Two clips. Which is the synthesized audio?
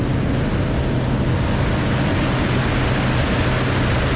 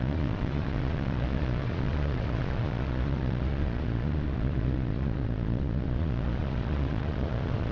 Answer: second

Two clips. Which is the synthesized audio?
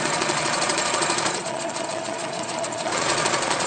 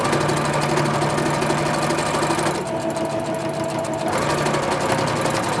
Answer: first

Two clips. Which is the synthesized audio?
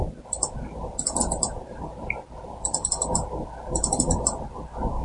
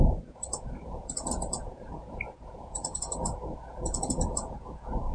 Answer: second